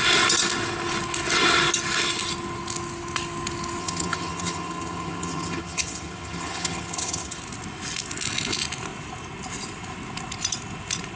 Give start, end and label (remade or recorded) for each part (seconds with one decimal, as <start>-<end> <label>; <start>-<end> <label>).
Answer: 0.0-3.8 recorded; 3.8-7.4 remade; 7.4-11.2 recorded